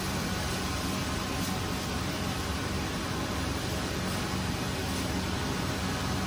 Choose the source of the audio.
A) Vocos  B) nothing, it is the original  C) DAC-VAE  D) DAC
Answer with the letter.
B